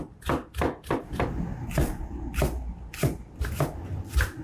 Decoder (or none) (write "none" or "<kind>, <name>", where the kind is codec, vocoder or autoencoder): none